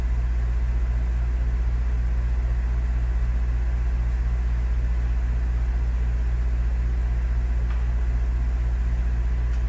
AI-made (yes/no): no